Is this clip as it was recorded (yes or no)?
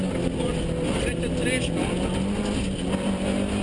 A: yes